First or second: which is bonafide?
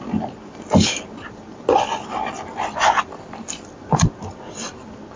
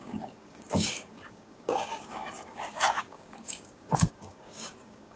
first